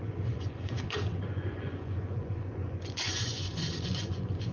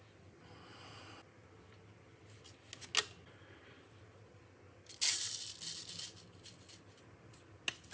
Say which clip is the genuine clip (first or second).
second